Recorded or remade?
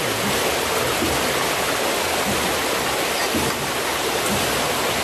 recorded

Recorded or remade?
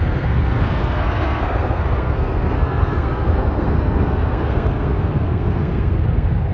remade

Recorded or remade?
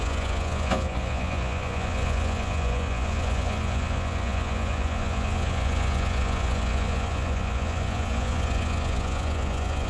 remade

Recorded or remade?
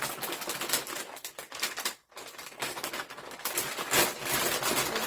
recorded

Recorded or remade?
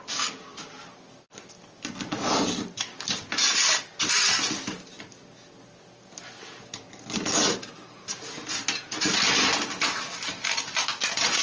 recorded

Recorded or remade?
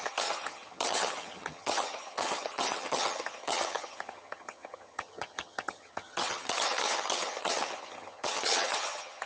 remade